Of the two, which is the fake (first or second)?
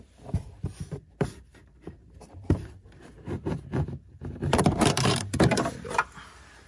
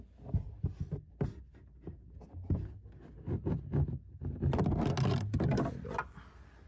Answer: first